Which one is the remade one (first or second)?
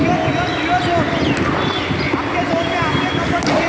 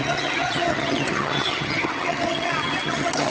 second